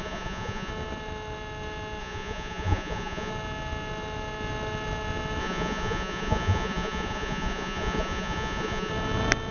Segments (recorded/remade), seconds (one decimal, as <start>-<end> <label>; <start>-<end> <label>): 0.0-0.7 remade; 0.7-2.0 recorded; 2.0-3.3 remade; 3.3-5.4 recorded; 5.4-8.9 remade; 8.9-9.5 recorded